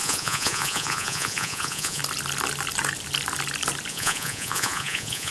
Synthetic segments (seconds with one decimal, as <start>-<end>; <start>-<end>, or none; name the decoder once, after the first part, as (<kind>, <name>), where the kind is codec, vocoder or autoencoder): 0.0-2.0 (vocoder, Vocos); 3.9-5.3